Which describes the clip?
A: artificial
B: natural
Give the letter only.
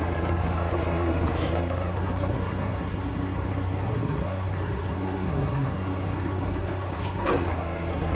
A